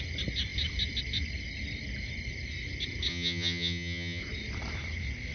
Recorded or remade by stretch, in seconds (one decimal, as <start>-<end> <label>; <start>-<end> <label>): 0.0-3.1 recorded; 3.1-4.2 remade; 4.2-5.3 recorded